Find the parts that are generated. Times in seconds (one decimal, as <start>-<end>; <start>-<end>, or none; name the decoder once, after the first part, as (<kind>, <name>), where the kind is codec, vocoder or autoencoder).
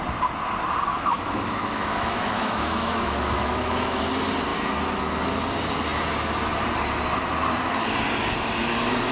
0.9-4.1 (autoencoder, DAC-VAE)